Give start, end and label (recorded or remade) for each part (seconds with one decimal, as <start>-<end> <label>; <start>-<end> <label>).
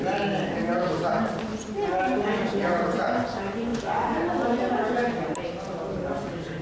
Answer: 0.0-6.6 recorded